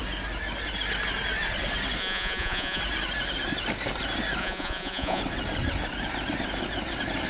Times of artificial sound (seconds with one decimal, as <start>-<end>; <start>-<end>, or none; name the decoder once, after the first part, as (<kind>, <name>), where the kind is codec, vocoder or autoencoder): 2.0-2.8 (vocoder, Vocos); 4.4-5.2